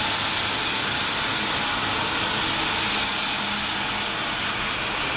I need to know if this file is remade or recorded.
recorded